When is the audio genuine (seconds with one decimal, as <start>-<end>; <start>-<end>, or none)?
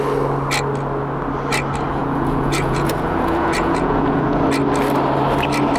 0.0-2.0; 4.4-5.8